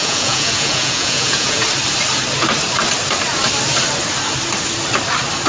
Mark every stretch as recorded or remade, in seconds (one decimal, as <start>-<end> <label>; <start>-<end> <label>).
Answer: 0.0-1.6 remade; 1.6-5.5 recorded